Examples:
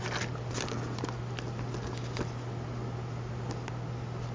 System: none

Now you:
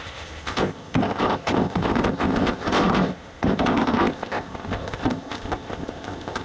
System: codec, ZipCodec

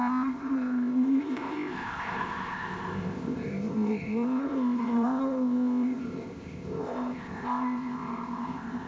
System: codec, ZipCodec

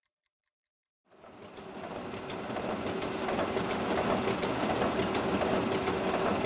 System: none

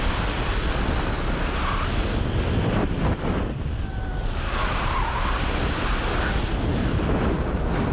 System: none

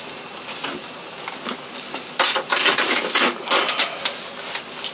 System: none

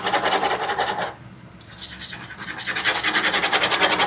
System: none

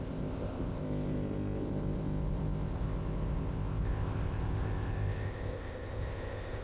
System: codec, ZipCodec